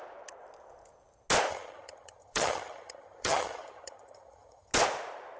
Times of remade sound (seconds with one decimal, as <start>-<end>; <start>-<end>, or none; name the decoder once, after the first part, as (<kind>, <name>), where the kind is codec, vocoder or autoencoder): 1.5-4.7 (vocoder, HiFi-GAN)